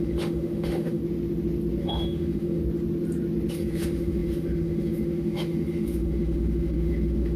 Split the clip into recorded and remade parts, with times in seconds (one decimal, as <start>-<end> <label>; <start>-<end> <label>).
0.0-1.0 remade; 1.0-1.8 recorded; 1.8-2.6 remade; 2.6-3.5 recorded; 3.5-7.4 remade